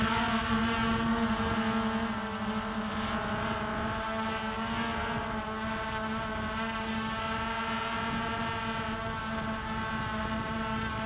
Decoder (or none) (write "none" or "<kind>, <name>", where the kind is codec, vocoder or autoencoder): none